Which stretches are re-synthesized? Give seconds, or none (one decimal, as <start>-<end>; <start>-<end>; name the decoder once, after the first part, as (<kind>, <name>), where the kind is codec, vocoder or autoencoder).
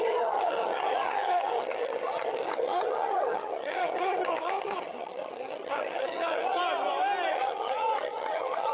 0.0-6.6 (vocoder, HiFi-GAN); 7.3-8.7